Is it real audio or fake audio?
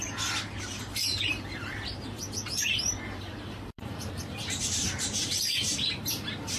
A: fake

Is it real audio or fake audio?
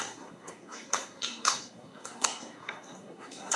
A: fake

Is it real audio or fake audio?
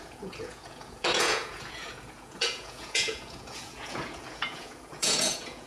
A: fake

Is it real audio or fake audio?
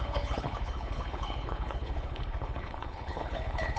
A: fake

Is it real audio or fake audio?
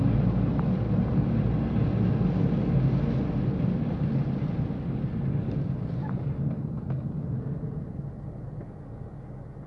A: real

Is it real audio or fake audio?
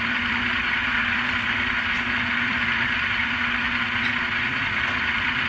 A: fake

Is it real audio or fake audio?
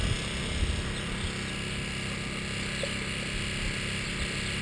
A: real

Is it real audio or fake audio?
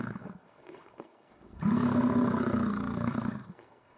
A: fake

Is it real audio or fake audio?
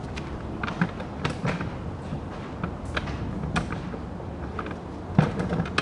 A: real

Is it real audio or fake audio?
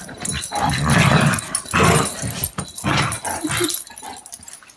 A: real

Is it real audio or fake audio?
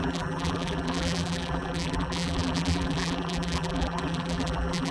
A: fake